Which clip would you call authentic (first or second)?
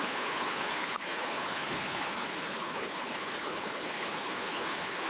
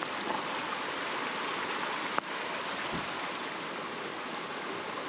second